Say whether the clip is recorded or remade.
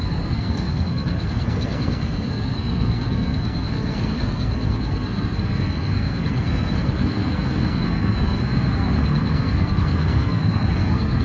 remade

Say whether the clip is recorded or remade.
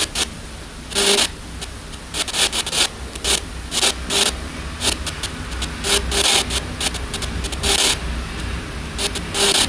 recorded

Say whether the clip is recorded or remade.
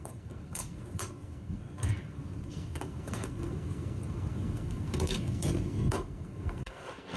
remade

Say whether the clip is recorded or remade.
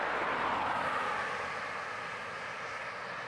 recorded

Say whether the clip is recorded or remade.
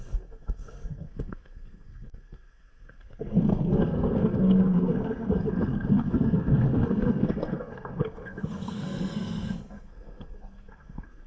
remade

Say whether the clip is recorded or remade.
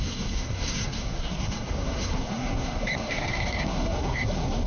remade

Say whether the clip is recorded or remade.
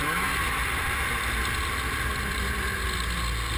recorded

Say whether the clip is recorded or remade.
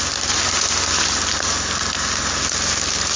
recorded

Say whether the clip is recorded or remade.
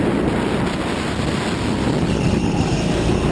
recorded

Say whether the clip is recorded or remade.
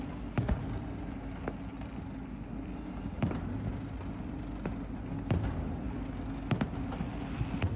recorded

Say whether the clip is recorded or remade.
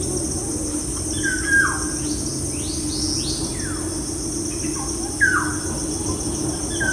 recorded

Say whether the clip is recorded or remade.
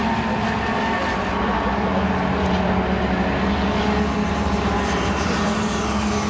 recorded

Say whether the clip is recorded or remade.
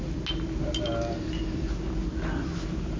recorded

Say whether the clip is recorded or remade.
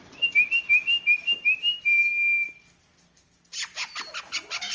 recorded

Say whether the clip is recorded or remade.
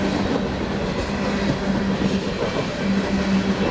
recorded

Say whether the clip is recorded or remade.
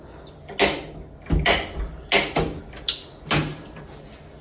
recorded